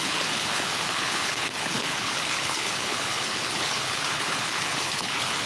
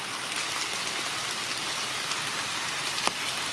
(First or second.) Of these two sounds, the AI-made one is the first